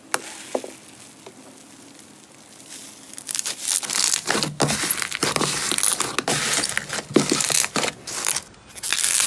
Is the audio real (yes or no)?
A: yes